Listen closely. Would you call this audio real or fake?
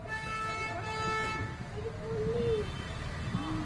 real